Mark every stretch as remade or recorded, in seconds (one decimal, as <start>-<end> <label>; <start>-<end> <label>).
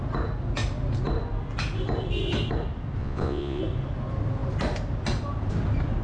0.0-3.0 recorded; 3.0-3.6 remade; 3.6-6.0 recorded